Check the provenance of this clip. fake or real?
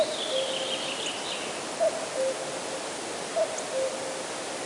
real